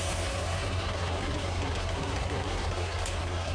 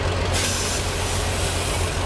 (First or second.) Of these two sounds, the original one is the second